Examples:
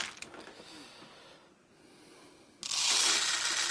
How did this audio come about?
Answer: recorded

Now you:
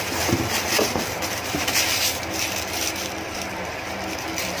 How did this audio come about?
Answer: remade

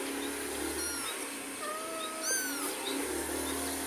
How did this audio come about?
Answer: recorded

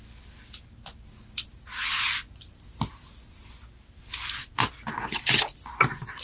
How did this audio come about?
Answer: recorded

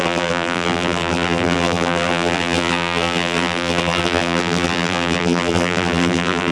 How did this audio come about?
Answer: remade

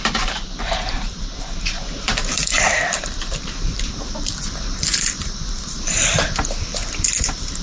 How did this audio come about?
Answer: remade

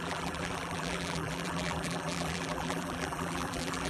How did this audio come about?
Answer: remade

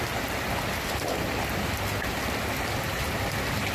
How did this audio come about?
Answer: recorded